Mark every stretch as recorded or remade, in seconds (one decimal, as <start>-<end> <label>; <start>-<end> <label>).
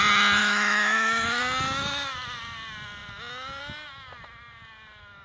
0.0-0.4 recorded; 0.4-1.4 remade; 1.4-5.2 recorded